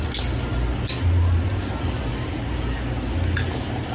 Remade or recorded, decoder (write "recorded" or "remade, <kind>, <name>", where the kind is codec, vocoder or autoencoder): recorded